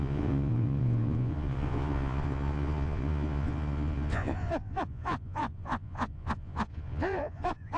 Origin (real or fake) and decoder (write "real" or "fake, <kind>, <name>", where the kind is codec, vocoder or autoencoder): fake, vocoder, Vocos